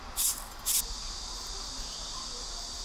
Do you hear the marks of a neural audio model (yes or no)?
no